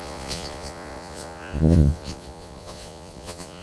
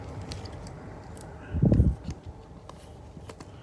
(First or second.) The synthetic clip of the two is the first